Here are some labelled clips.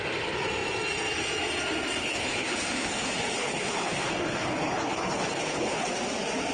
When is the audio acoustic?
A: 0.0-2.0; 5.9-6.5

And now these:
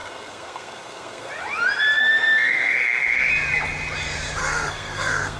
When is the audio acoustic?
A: 1.3-2.0; 3.3-4.4

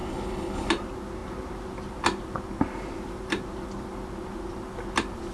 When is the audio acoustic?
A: 0.7-5.3

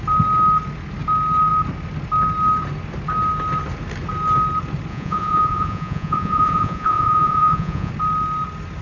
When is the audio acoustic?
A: 0.0-4.9; 7.9-8.8

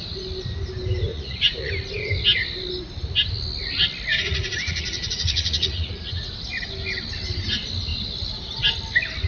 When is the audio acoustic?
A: 0.0-1.1; 1.7-4.1; 6.3-9.3

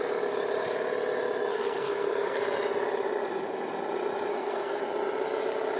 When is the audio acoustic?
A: 0.0-1.5; 2.4-4.3; 4.8-5.8

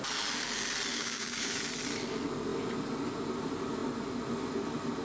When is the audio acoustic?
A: 0.0-0.9; 1.5-5.0

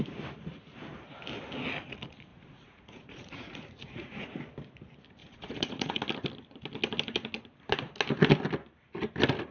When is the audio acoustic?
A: 0.0-2.3; 4.4-5.2; 6.0-9.5